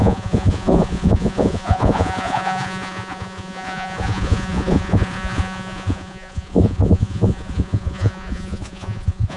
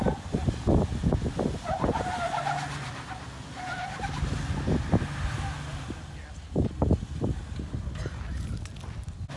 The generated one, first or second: first